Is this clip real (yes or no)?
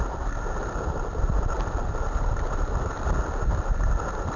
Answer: yes